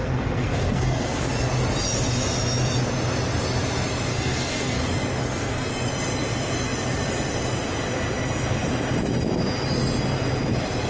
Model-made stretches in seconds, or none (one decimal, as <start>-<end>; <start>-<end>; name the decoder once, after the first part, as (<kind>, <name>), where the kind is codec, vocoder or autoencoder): 0.0-1.3 (codec, SNAC); 4.1-4.8; 5.2-5.7